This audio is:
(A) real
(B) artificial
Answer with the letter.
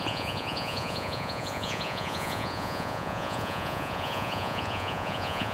B